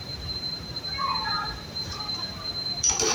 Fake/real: fake